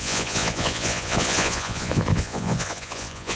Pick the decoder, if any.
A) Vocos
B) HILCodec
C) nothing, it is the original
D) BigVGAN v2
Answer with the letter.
A